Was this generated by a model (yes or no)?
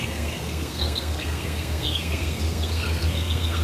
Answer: yes